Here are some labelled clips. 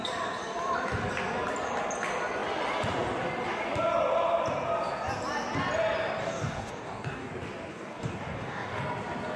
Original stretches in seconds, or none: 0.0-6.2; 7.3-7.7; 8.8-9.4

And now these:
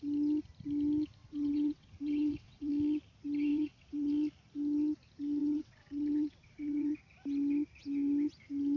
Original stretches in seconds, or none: 0.0-1.2; 2.7-3.5; 4.1-5.4; 7.0-8.8

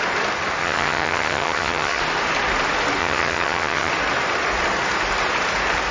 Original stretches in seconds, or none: 0.0-0.6; 2.0-3.0; 3.9-5.9